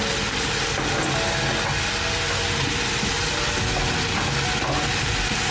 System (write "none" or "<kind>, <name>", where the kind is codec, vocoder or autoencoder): none